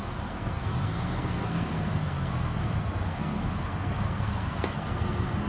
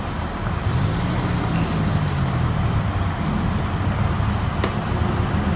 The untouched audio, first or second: second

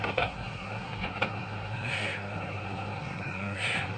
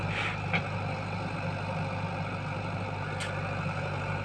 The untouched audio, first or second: second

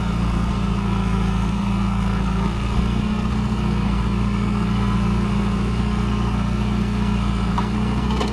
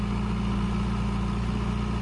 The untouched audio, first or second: second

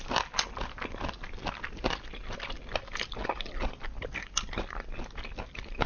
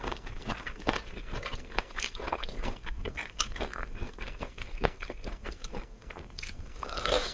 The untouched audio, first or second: first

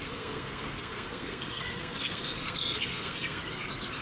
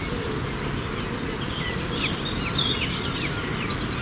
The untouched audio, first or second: second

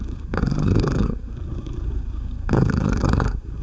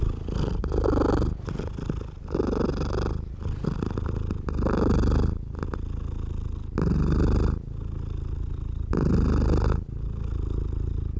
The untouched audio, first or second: second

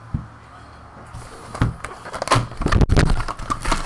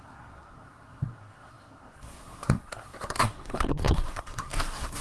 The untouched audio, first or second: first